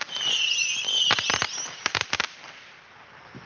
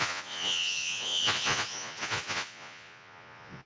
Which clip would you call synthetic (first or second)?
second